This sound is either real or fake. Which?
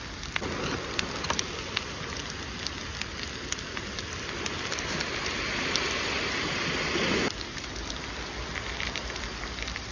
real